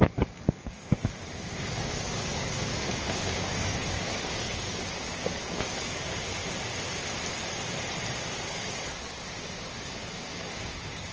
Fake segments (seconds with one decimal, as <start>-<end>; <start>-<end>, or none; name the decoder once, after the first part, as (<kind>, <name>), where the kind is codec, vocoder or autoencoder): 0.0-6.4 (codec, DAC); 8.5-11.1